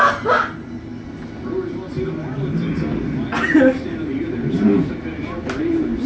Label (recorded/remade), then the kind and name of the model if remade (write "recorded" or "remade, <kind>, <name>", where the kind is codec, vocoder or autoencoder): recorded